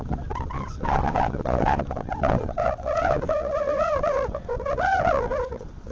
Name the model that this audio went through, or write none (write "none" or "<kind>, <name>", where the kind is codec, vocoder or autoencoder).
vocoder, WaveNeXt